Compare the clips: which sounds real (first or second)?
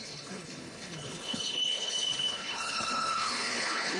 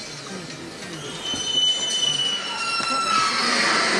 second